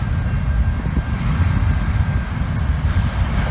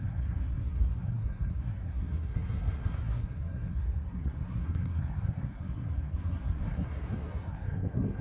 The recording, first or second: first